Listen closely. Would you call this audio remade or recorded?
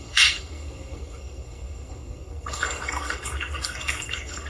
remade